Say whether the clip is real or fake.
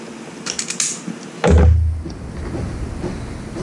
real